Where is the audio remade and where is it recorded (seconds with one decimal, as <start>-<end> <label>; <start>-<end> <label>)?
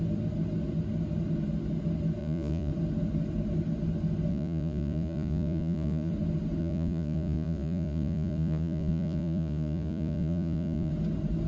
0.0-2.2 recorded; 2.2-2.7 remade; 2.7-4.3 recorded; 4.3-6.1 remade; 6.1-6.6 recorded; 6.6-10.9 remade; 10.9-11.5 recorded